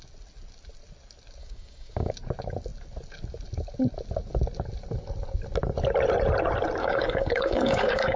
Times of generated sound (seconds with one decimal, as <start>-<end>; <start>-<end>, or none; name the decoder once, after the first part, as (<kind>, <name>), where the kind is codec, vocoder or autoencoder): 1.4-2.1 (codec, DAC); 6.8-8.2